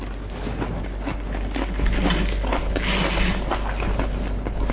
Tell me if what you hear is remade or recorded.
recorded